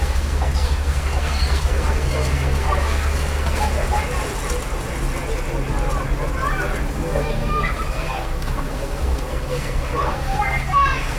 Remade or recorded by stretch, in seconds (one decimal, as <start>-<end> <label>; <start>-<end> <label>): 0.0-4.0 remade; 4.0-6.9 recorded; 6.9-11.2 remade